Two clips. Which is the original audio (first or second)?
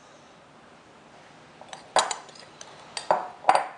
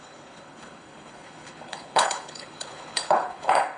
first